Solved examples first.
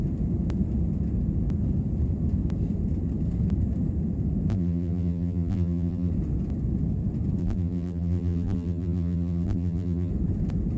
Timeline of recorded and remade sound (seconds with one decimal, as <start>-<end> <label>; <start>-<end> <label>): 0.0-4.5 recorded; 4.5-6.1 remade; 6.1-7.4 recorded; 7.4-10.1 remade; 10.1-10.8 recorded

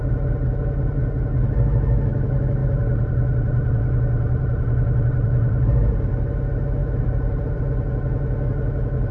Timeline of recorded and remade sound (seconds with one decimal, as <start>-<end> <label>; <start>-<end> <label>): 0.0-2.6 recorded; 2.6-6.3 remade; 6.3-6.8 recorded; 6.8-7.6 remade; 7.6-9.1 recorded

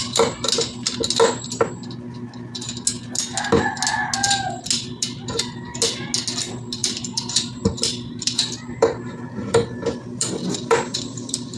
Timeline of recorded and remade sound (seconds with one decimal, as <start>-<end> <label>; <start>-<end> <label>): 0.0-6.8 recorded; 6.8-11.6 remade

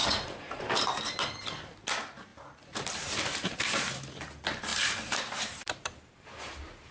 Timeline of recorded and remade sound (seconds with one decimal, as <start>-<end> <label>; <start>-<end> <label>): 0.0-0.6 remade; 0.6-2.3 recorded; 2.3-3.1 remade; 3.1-4.7 recorded; 4.7-6.0 remade; 6.0-6.9 recorded